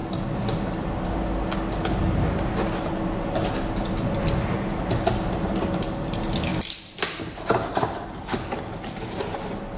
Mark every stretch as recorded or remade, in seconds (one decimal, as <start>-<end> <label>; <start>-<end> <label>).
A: 0.0-6.5 recorded; 6.5-7.2 remade; 7.2-9.8 recorded